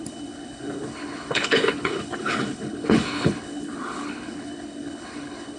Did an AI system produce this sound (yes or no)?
yes